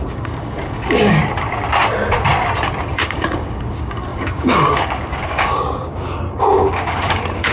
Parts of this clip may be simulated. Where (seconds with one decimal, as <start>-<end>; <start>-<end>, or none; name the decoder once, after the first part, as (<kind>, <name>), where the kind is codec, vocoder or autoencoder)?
0.0-1.2 (codec, DAC); 2.9-7.5